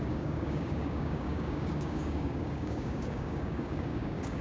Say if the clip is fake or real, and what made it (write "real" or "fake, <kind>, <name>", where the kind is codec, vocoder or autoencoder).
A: fake, codec, DAC